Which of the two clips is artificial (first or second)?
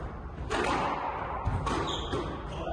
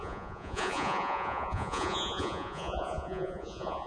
second